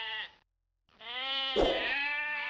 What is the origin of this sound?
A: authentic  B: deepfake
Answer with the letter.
B